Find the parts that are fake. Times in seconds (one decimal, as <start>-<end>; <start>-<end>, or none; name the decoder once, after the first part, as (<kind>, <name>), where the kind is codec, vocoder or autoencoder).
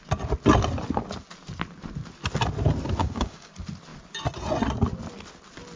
3.0-3.5 (codec, DAC)